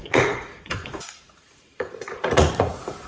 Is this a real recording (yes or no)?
no